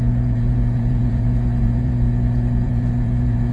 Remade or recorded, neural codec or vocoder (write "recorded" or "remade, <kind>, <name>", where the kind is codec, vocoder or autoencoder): remade, vocoder, Vocos